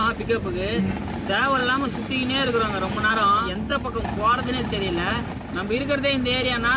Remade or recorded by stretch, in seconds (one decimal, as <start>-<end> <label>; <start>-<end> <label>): 0.0-6.8 recorded